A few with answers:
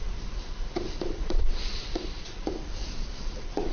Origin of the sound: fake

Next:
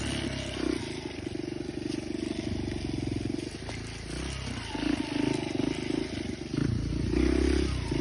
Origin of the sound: real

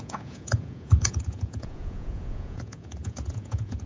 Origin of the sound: fake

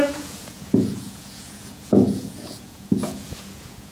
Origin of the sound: fake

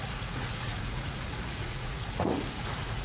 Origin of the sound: fake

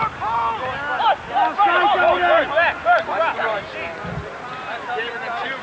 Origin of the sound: real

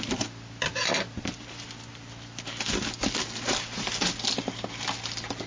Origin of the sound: real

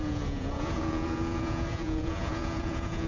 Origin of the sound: fake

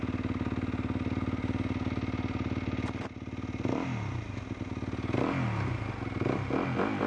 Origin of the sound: real